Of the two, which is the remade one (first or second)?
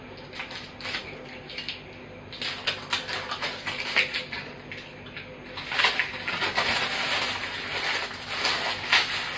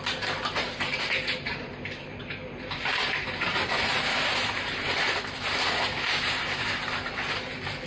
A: second